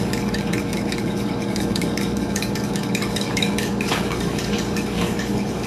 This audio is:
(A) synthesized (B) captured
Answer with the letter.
A